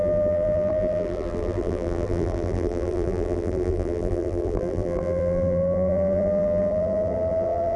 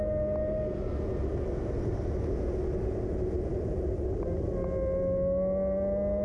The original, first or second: second